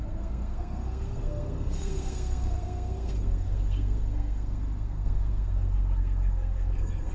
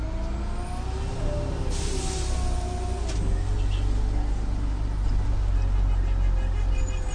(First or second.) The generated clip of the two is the first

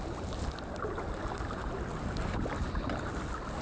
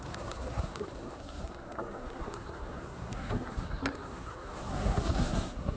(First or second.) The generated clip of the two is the second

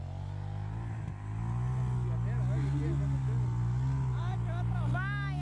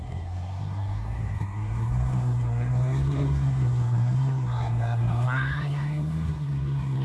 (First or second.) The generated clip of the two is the second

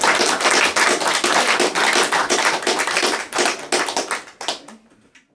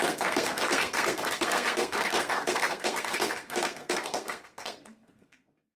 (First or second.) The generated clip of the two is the second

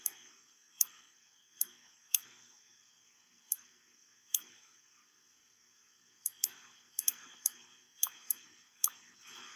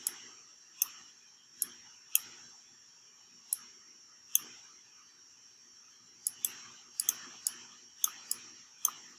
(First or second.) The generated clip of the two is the first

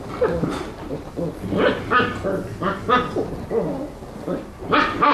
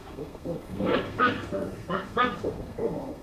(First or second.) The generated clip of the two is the second